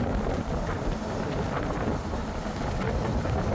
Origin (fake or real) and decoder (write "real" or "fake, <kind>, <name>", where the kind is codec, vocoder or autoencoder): real